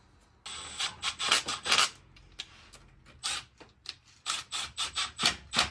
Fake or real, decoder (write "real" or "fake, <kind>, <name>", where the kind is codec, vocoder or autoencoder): real